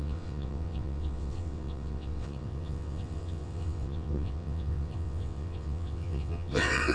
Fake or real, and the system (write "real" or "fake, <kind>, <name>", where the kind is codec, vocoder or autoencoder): fake, vocoder, WaveNeXt